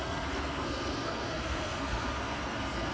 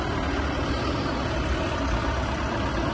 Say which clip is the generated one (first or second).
first